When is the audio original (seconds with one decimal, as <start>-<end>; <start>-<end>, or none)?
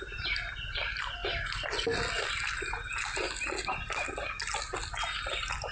0.0-5.7